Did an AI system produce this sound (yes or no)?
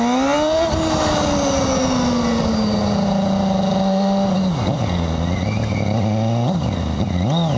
no